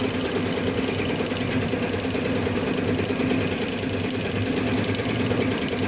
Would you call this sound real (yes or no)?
yes